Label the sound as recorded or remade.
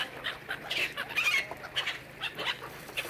recorded